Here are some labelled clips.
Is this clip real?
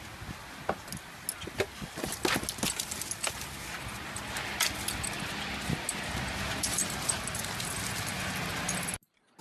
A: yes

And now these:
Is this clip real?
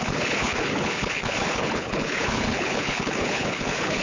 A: no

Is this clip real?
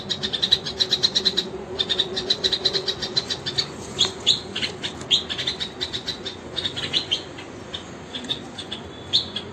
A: no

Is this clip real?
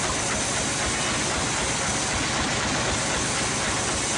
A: yes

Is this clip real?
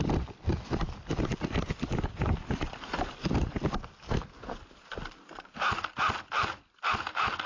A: yes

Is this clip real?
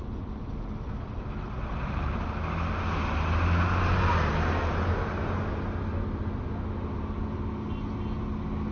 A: yes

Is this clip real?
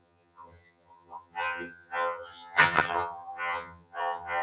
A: no